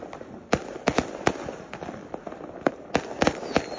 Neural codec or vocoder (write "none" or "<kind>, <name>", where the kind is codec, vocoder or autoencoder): none